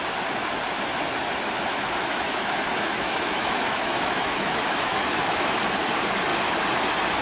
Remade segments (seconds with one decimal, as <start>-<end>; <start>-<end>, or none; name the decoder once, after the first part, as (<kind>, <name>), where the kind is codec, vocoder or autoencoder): 1.7-5.6 (autoencoder, DAC-VAE)